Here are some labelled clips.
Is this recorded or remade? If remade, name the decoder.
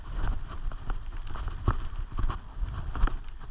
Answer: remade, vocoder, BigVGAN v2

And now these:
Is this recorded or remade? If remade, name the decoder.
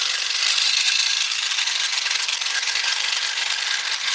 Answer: recorded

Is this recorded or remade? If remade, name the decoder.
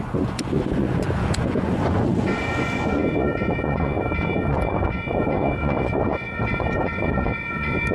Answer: remade, vocoder, Vocos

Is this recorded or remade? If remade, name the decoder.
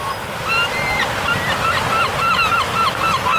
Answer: recorded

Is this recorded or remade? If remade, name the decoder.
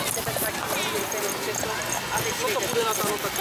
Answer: recorded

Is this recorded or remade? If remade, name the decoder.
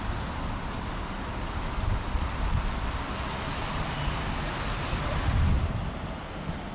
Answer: recorded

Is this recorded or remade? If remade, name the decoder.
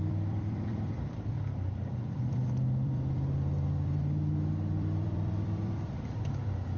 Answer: remade, vocoder, BigVGAN v2